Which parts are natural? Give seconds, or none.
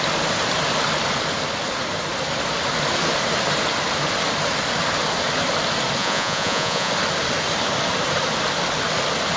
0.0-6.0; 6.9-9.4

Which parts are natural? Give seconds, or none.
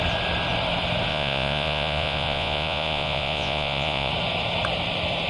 0.0-1.1; 4.1-5.3